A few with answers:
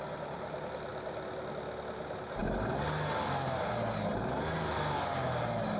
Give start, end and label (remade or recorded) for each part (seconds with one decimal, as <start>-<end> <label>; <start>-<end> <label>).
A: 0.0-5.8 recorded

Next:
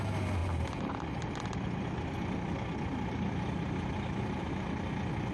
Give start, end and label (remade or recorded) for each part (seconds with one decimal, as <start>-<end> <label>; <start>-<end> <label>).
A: 0.0-5.3 recorded

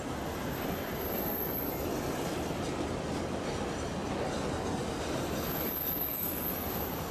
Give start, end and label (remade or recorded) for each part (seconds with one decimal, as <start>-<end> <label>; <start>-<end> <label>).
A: 0.0-7.1 recorded

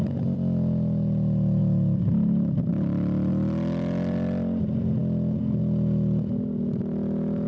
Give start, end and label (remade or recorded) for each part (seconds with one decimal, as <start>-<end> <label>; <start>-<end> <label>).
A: 0.0-7.5 recorded

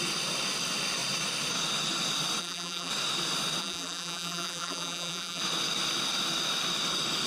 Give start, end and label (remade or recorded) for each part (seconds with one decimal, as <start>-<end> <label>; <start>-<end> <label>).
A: 0.0-2.4 recorded; 2.4-2.9 remade; 2.9-3.6 recorded; 3.6-5.4 remade; 5.4-7.3 recorded

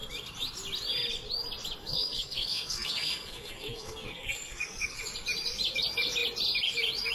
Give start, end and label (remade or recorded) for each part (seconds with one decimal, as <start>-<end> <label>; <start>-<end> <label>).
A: 0.0-1.8 recorded; 1.8-5.0 remade; 5.0-7.1 recorded